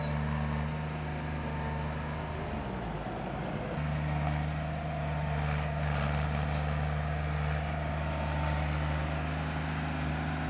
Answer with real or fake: real